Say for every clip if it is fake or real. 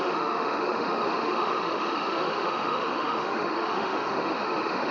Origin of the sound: fake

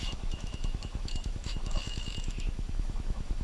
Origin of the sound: fake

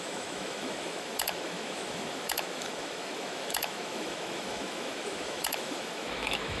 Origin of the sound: fake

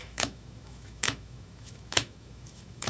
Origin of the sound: fake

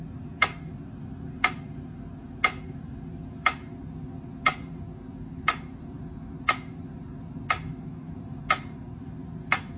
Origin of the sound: real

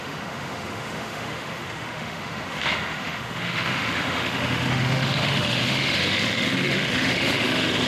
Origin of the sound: fake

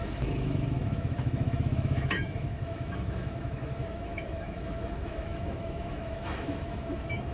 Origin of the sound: fake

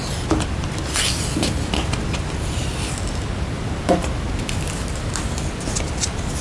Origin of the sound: real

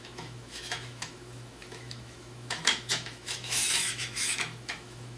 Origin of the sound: fake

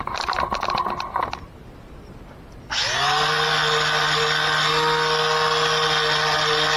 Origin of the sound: real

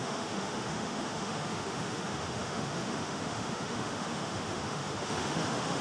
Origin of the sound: fake